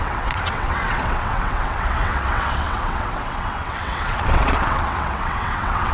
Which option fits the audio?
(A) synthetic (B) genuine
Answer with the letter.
A